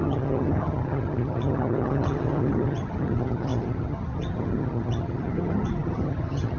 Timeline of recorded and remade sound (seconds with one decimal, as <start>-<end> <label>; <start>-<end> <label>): 0.0-6.6 remade